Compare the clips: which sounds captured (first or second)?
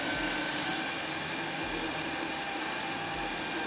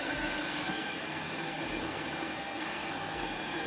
first